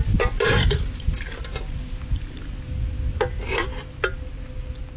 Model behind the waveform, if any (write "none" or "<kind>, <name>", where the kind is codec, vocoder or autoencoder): none